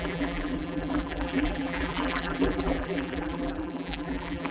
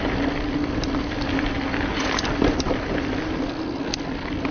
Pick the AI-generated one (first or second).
first